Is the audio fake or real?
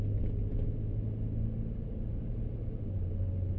real